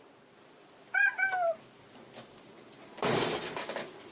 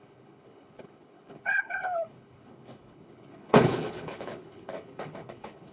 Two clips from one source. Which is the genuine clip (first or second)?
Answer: first